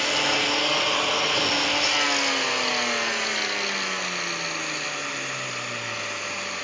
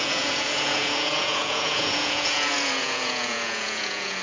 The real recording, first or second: first